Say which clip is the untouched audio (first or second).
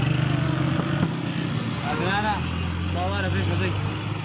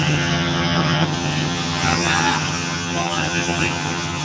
first